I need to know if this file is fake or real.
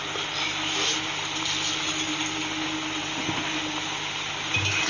real